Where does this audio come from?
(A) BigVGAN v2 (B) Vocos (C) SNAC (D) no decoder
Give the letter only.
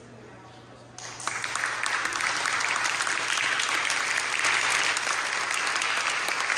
D